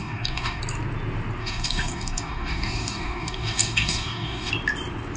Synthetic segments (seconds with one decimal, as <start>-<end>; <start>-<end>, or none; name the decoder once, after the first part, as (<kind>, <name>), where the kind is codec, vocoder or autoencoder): 0.0-0.6 (codec, DAC); 1.4-4.5